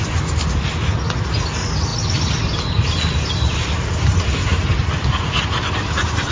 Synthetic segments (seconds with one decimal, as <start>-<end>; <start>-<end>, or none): none